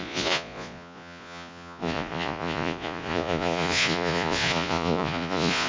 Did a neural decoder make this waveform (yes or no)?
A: yes